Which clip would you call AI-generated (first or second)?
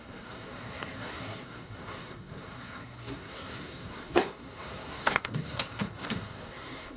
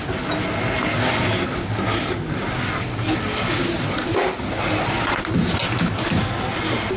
first